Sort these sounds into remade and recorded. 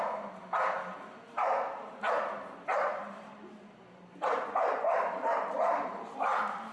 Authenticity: remade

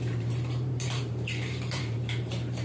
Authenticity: remade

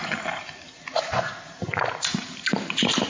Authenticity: remade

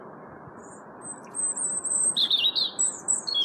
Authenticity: recorded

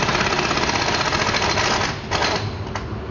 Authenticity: recorded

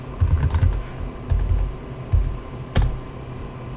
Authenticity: recorded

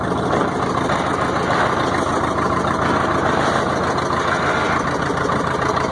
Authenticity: recorded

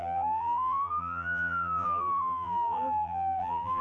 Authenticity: remade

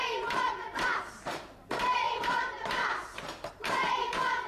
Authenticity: remade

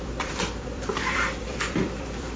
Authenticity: remade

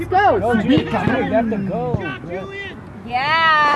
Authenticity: recorded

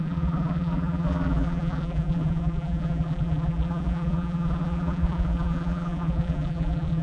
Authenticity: remade